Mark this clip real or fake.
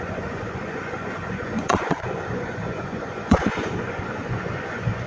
fake